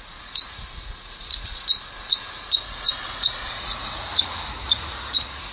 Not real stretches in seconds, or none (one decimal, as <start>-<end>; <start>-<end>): 0.0-5.5